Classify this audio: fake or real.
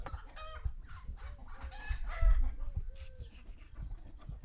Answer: real